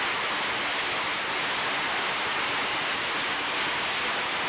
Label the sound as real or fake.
real